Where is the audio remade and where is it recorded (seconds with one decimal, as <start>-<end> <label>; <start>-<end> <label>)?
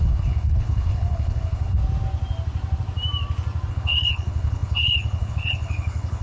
0.0-1.8 remade; 1.8-3.7 recorded; 3.7-6.2 remade